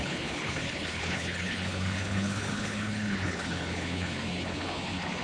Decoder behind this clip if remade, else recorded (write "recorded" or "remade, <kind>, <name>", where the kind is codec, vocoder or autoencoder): remade, codec, HILCodec